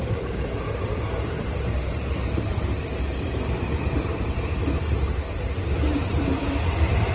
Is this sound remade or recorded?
remade